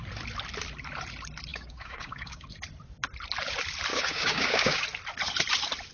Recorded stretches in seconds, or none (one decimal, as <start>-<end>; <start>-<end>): 0.0-1.5; 2.5-3.9; 4.8-5.9